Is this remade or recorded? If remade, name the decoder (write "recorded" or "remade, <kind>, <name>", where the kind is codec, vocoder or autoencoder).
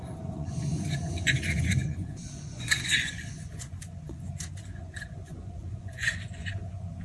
remade, vocoder, Vocos